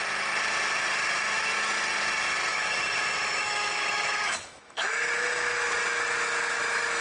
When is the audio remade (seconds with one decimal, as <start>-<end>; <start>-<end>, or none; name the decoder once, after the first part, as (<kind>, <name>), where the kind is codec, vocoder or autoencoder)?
2.5-7.0 (autoencoder, DAC-VAE)